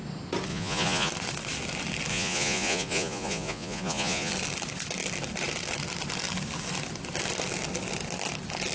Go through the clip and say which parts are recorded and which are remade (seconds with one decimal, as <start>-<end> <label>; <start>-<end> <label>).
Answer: 0.0-0.5 recorded; 0.5-1.1 remade; 1.1-2.1 recorded; 2.1-4.3 remade; 4.3-8.7 recorded

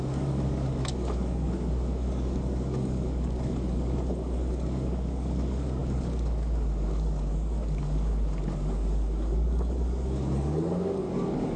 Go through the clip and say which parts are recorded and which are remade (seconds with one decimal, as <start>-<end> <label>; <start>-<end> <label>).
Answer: 0.0-11.6 remade

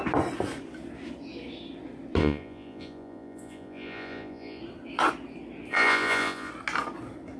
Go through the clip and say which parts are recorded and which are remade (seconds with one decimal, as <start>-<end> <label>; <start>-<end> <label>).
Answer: 0.0-2.2 recorded; 2.2-4.6 remade; 4.6-5.7 recorded; 5.7-6.5 remade; 6.5-7.4 recorded

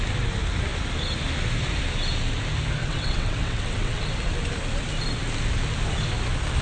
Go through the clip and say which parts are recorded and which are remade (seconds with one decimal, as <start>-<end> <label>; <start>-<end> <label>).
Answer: 0.0-2.8 recorded; 2.8-4.0 remade; 4.0-6.6 recorded

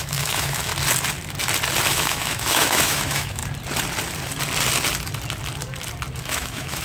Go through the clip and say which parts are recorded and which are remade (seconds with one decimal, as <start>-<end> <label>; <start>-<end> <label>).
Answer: 0.0-0.7 remade; 0.7-1.9 recorded; 1.9-3.4 remade; 3.4-6.2 recorded; 6.2-6.8 remade